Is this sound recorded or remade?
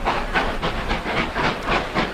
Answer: recorded